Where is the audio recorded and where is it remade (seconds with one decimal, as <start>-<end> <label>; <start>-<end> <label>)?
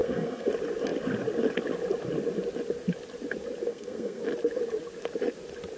0.0-0.5 remade; 0.5-3.7 recorded; 3.7-4.2 remade; 4.2-5.8 recorded